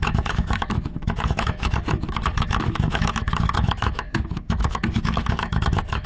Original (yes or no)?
no